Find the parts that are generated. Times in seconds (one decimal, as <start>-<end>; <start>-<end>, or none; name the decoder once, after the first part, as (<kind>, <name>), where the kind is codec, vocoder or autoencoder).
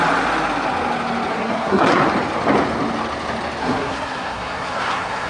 1.3-2.0 (codec, SNAC); 3.6-5.3